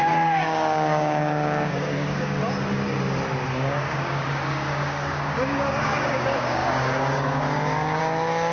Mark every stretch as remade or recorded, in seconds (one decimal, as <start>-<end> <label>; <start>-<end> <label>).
0.0-2.4 remade; 2.4-3.5 recorded; 3.5-8.5 remade